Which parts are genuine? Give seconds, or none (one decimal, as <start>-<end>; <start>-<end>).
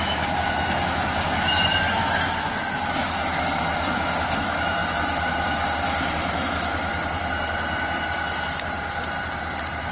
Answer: 6.9-9.9